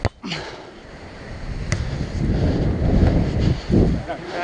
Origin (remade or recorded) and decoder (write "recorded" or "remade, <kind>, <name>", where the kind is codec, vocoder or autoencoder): recorded